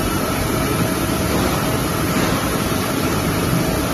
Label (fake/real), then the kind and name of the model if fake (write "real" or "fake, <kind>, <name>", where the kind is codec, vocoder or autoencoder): fake, vocoder, BigVGAN v2